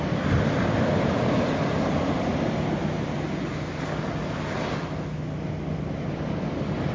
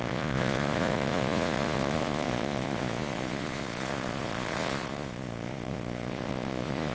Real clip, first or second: first